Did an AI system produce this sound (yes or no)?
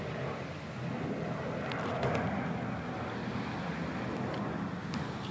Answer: no